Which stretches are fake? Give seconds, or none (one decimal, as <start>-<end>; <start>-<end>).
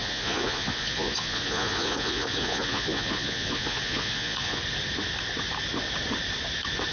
0.0-4.6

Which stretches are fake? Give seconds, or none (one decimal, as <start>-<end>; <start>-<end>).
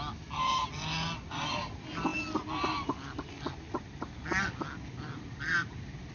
none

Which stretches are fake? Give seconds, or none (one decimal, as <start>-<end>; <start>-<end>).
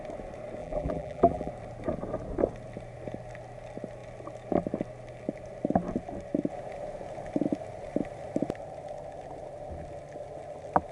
0.6-1.5